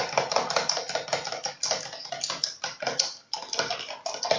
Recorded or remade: recorded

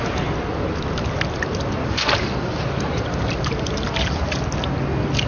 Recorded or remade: recorded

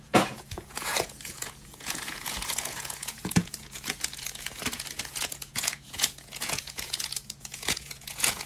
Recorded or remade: remade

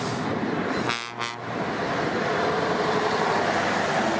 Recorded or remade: recorded